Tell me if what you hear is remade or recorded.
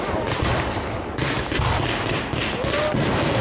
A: recorded